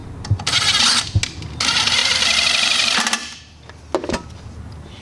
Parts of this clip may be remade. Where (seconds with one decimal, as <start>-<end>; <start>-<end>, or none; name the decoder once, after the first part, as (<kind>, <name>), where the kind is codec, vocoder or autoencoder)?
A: 2.0-3.4 (vocoder, BigVGAN v2)